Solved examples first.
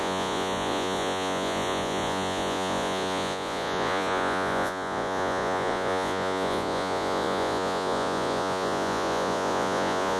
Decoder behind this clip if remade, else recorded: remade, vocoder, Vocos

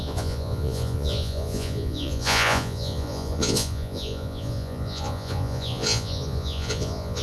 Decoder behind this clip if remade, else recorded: remade, vocoder, Vocos